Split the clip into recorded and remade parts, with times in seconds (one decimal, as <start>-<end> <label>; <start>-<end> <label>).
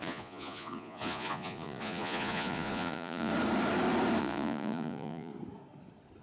0.0-3.3 remade; 3.3-4.2 recorded; 4.2-5.3 remade; 5.3-6.2 recorded